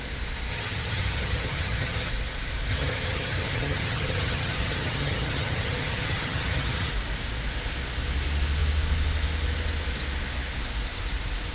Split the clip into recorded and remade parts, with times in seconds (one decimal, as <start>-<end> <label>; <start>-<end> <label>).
0.0-0.5 recorded; 0.5-2.1 remade; 2.1-2.7 recorded; 2.7-6.9 remade; 6.9-11.5 recorded